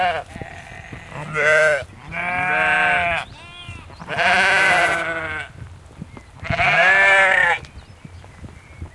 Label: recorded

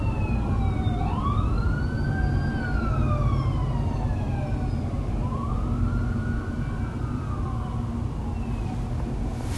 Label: recorded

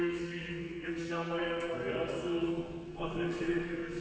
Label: remade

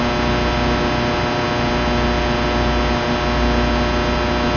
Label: recorded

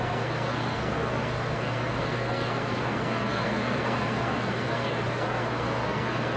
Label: remade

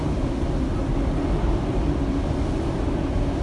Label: recorded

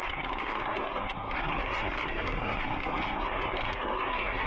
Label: remade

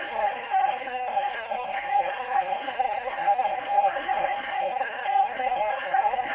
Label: remade